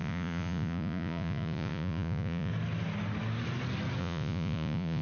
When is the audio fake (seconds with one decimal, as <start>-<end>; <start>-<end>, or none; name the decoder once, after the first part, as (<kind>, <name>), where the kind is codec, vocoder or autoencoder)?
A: 0.0-2.5 (vocoder, Vocos); 4.0-5.0